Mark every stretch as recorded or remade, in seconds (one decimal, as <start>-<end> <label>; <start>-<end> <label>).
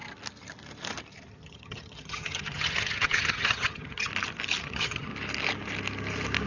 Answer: 0.0-1.3 recorded; 1.3-4.1 remade; 4.1-4.6 recorded; 4.6-5.1 remade; 5.1-6.5 recorded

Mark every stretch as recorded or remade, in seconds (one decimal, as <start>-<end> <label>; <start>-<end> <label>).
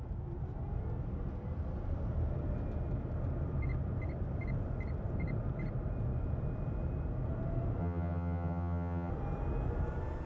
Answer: 0.0-7.8 recorded; 7.8-9.1 remade; 9.1-10.3 recorded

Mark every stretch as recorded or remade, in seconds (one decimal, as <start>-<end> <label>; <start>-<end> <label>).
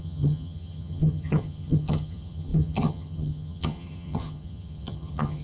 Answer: 0.0-5.4 remade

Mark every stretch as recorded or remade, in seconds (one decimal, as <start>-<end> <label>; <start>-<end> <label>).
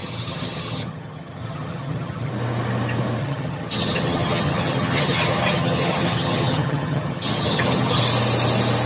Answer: 0.0-2.3 remade; 2.3-3.2 recorded; 3.2-8.0 remade; 8.0-8.9 recorded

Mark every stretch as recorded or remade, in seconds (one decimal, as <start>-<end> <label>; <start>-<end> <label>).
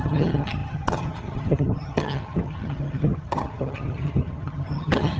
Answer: 0.0-5.2 remade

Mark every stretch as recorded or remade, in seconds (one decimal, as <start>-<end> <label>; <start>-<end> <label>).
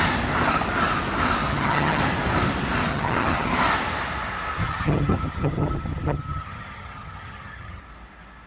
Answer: 0.0-1.4 recorded; 1.4-2.0 remade; 2.0-2.9 recorded; 2.9-3.5 remade; 3.5-4.6 recorded; 4.6-7.8 remade; 7.8-8.5 recorded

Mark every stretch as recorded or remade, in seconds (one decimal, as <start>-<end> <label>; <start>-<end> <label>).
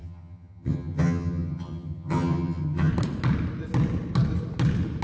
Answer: 0.0-2.9 remade; 2.9-5.0 recorded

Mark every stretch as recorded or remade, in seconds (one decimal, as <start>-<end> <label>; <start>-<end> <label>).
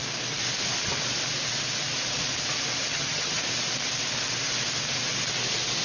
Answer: 0.0-2.9 recorded; 2.9-3.4 remade; 3.4-5.8 recorded